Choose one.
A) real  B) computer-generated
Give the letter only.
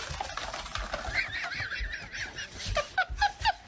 A